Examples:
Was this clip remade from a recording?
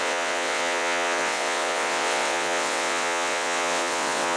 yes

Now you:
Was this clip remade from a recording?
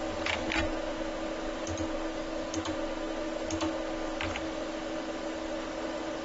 no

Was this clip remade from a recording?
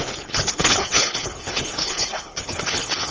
yes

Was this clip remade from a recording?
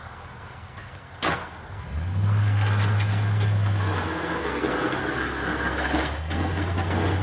yes